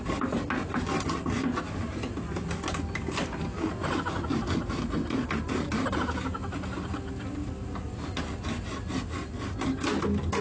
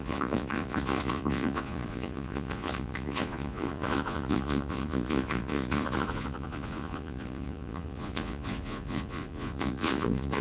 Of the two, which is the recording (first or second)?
first